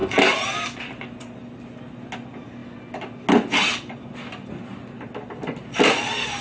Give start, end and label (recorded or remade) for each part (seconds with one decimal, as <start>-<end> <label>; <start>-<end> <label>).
0.0-6.4 recorded